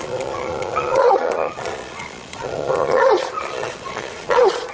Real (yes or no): no